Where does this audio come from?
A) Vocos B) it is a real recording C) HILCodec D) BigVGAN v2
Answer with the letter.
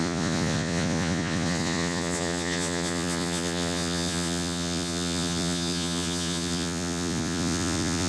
A